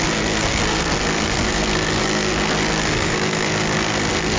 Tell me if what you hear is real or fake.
fake